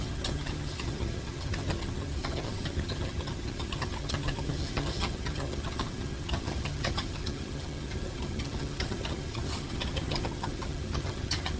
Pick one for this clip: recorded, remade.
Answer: remade